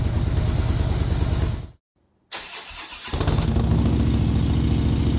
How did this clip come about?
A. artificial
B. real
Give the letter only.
B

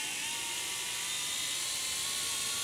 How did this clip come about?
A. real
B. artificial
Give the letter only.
A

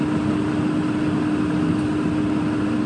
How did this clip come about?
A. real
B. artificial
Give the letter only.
A